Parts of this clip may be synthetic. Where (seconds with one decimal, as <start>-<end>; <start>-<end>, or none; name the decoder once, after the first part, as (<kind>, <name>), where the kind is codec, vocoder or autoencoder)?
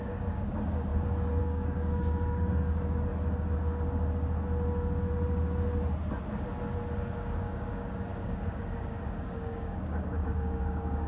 0.0-0.9 (codec, DAC); 1.4-3.1; 7.0-11.1